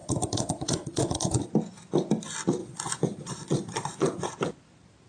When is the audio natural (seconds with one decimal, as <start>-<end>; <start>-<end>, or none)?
1.5-2.6; 4.3-5.1